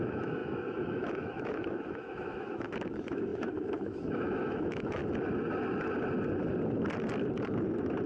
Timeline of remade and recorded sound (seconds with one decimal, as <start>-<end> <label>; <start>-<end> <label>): 0.0-5.0 remade; 5.0-8.1 recorded